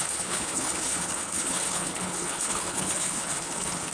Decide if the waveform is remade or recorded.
remade